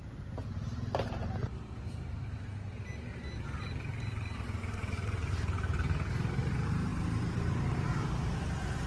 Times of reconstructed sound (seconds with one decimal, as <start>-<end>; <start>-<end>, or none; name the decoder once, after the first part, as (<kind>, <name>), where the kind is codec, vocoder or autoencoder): 0.0-8.9 (vocoder, BigVGAN v2)